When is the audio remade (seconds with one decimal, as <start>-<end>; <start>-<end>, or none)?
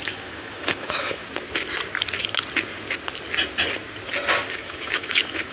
0.0-1.2; 4.5-5.5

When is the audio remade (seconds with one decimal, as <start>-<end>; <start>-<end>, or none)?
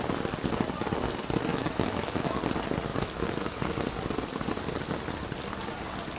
1.5-2.4; 2.9-3.7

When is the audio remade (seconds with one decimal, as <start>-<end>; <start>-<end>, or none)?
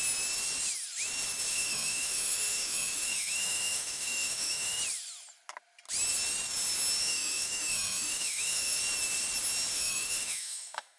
1.5-4.8; 7.0-8.8; 9.7-11.0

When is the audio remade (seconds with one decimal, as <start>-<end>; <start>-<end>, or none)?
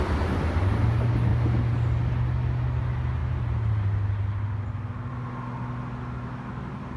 none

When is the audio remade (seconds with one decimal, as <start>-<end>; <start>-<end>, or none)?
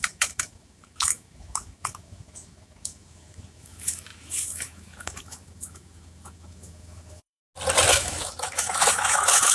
0.0-7.4; 7.9-9.5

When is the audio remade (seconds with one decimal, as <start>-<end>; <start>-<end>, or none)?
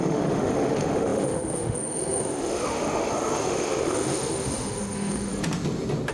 0.0-5.3